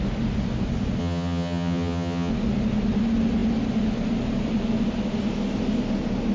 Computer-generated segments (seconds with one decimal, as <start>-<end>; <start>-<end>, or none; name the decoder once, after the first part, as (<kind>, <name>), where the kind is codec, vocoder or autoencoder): 1.0-2.3 (vocoder, HiFi-GAN)